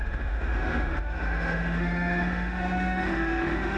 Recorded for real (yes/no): no